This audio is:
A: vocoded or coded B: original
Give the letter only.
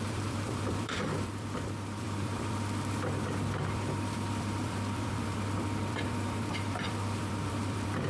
A